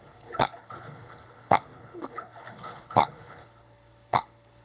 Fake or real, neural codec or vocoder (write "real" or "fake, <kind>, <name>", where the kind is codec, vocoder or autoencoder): fake, codec, HILCodec